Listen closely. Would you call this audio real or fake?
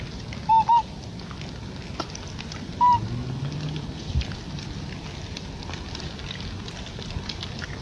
real